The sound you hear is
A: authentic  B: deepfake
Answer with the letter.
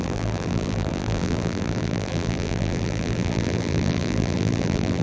B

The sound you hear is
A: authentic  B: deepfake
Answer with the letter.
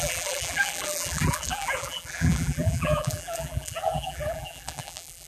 B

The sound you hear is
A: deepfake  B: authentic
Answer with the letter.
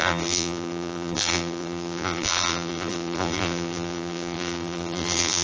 A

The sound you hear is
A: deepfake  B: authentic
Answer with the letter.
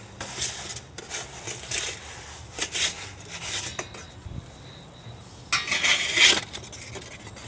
B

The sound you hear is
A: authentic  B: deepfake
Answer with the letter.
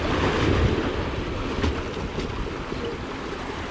A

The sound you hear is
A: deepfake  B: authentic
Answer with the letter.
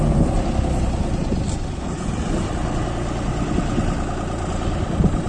B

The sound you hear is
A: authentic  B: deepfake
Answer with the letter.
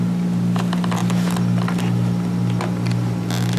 A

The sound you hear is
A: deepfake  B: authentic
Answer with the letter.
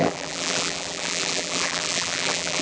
A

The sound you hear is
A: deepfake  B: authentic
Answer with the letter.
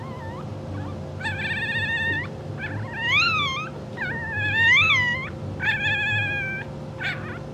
B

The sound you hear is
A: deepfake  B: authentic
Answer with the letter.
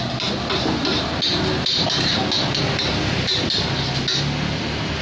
B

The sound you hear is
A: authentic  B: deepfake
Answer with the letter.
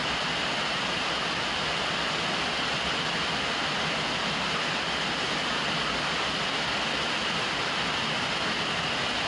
A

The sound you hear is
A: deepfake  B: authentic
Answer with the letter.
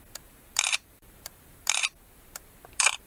A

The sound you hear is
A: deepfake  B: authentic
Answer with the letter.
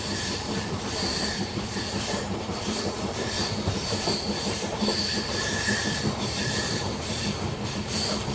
A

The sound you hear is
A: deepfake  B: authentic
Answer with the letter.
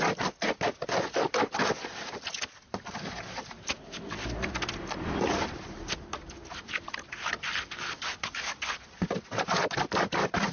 A